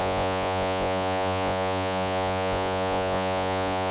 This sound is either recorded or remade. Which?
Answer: remade